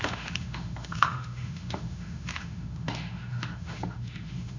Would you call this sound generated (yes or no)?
yes